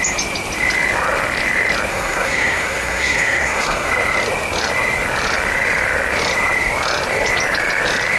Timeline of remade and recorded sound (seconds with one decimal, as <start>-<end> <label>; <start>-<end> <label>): 0.0-1.9 recorded; 1.9-3.9 remade; 3.9-8.2 recorded

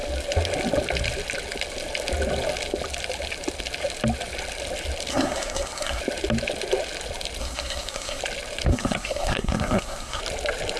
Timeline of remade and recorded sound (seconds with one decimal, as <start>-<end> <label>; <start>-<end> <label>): 0.0-5.1 recorded; 5.1-6.0 remade; 6.0-7.4 recorded; 7.4-8.2 remade; 8.2-8.7 recorded; 8.7-10.2 remade; 10.2-10.8 recorded

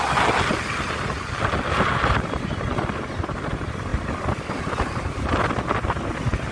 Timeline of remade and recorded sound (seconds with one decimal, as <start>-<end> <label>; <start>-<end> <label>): 0.0-6.5 recorded

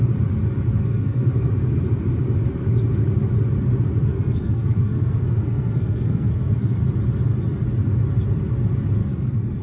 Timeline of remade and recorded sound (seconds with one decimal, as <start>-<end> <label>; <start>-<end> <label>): 0.0-0.8 recorded; 0.8-1.5 remade; 1.5-4.1 recorded; 4.1-6.8 remade; 6.8-9.0 recorded; 9.0-9.6 remade

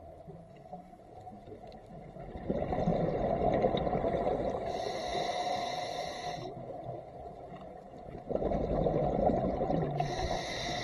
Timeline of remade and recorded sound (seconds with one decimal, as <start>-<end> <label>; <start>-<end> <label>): 0.0-0.4 recorded; 0.4-1.0 remade; 1.0-10.8 recorded

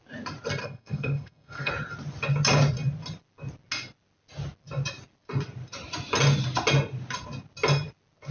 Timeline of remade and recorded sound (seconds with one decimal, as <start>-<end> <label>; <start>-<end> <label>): 0.0-0.6 recorded; 0.6-1.7 remade; 1.7-8.3 recorded